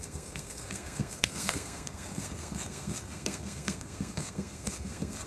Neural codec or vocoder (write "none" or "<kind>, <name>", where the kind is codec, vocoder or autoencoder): codec, SNAC